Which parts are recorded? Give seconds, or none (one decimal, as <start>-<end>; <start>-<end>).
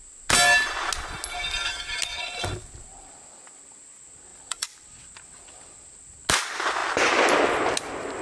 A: 0.0-4.3; 5.1-8.2